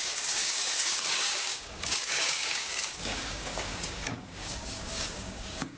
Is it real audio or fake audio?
fake